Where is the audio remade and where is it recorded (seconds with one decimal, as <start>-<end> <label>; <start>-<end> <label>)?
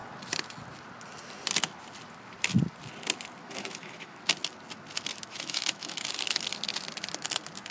0.0-3.4 recorded; 3.4-4.2 remade; 4.2-5.1 recorded; 5.1-6.1 remade; 6.1-7.7 recorded